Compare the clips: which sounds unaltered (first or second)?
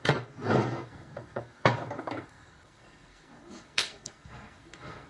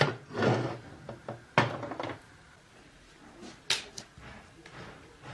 second